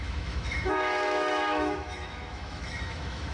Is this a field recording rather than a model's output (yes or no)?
no